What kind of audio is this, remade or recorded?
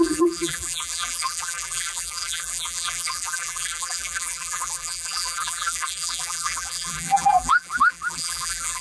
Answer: remade